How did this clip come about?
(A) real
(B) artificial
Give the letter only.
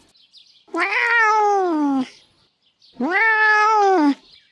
A